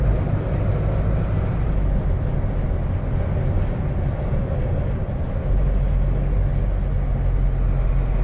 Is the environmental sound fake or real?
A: real